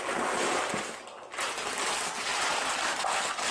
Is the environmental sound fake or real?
real